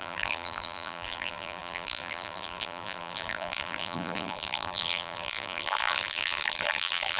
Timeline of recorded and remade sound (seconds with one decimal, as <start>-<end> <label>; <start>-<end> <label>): 0.0-7.2 remade